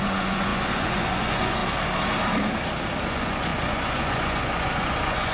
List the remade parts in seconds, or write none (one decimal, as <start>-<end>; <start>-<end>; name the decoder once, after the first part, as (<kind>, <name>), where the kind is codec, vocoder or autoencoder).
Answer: 0.0-1.6 (vocoder, Vocos); 3.1-5.3